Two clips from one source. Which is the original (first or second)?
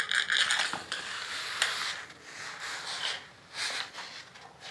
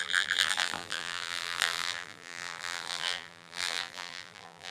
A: first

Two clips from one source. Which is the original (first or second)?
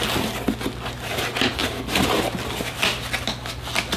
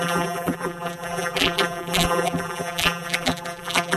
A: first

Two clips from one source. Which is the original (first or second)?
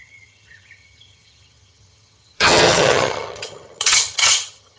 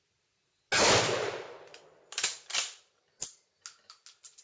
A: second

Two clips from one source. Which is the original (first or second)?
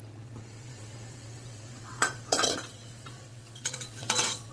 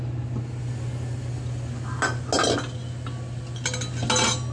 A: second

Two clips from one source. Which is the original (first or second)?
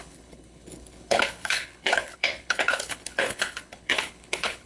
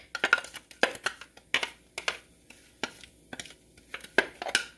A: second